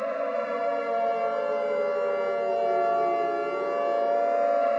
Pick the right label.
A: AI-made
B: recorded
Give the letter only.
B